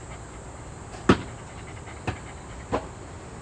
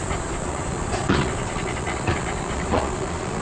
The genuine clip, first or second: first